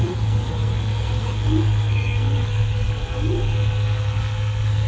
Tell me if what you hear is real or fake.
fake